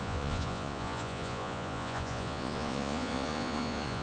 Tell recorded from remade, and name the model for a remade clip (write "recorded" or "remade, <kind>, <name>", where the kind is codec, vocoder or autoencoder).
remade, vocoder, Vocos